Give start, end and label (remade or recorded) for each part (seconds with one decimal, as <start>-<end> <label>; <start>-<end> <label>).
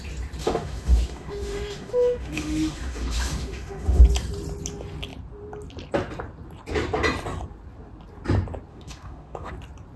0.0-0.4 recorded; 0.4-4.0 remade; 4.0-8.7 recorded; 8.7-9.5 remade; 9.5-10.0 recorded